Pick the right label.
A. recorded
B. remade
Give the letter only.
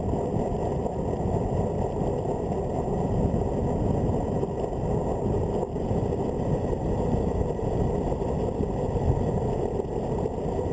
A